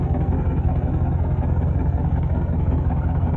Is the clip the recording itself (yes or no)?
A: no